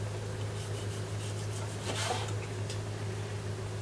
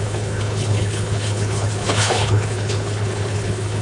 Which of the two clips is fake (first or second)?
second